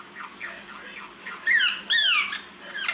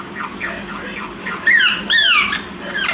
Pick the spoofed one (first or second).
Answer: second